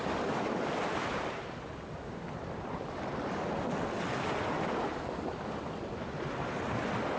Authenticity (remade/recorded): recorded